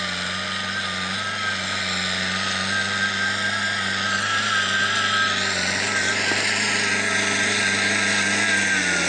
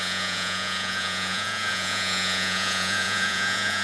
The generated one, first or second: second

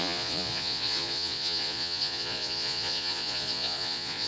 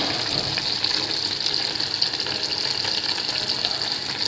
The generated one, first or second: first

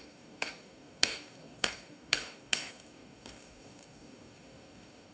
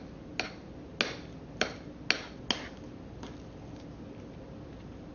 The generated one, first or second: first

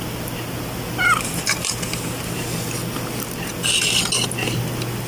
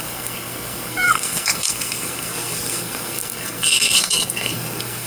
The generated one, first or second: second